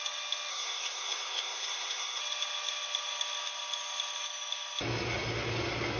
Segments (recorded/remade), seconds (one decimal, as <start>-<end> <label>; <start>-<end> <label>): 0.0-0.5 recorded; 0.5-2.2 remade; 2.2-6.0 recorded